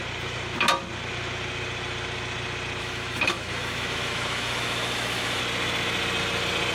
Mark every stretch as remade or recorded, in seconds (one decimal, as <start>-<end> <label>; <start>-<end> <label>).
0.0-2.8 recorded; 2.8-5.4 remade; 5.4-6.7 recorded